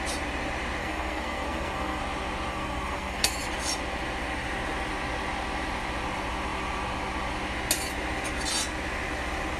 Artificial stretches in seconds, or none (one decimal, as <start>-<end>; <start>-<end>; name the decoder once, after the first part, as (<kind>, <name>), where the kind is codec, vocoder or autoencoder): 0.8-2.0 (codec, SNAC); 2.5-3.3